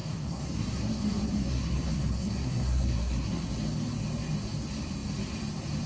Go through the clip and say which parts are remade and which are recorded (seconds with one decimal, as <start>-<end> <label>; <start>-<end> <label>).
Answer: 0.0-3.5 remade; 3.5-5.9 recorded